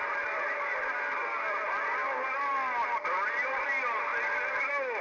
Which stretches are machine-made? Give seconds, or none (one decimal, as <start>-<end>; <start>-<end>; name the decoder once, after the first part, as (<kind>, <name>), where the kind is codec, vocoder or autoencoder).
0.0-2.0 (vocoder, BigVGAN v2); 3.0-4.1; 4.6-5.0